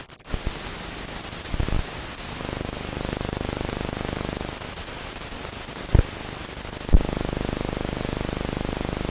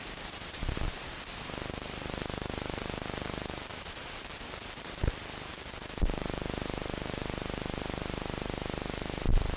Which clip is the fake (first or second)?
second